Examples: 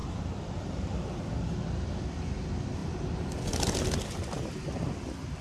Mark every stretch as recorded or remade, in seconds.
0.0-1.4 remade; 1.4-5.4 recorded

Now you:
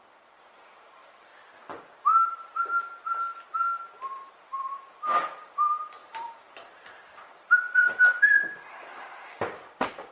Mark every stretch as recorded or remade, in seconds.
0.0-1.3 remade; 1.3-3.9 recorded; 3.9-10.1 remade

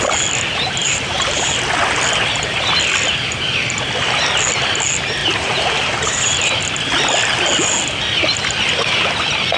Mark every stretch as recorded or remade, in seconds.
0.0-0.8 recorded; 0.8-1.5 remade; 1.5-5.2 recorded; 5.2-6.6 remade; 6.6-9.6 recorded

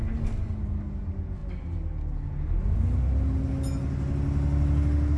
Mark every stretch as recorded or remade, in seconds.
0.0-5.2 recorded

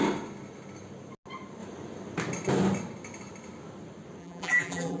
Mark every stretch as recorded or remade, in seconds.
0.0-4.2 recorded; 4.2-5.0 remade

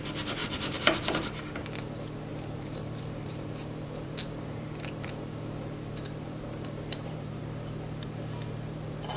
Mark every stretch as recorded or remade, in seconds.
0.0-0.4 recorded; 0.4-1.4 remade; 1.4-2.3 recorded; 2.3-7.4 remade; 7.4-9.2 recorded

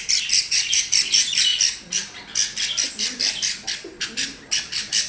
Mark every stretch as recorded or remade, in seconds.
0.0-1.5 remade; 1.5-2.9 recorded; 2.9-5.1 remade

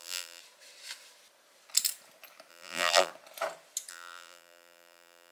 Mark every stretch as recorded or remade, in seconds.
0.0-0.4 remade; 0.4-2.5 recorded; 2.5-3.1 remade; 3.1-3.9 recorded; 3.9-5.3 remade